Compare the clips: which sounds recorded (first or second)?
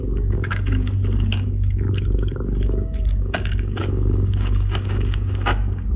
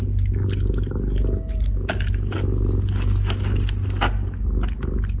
second